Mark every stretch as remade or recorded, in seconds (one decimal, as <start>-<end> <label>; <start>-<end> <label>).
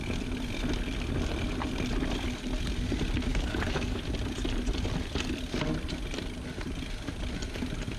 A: 0.0-3.3 recorded; 3.3-4.0 remade; 4.0-8.0 recorded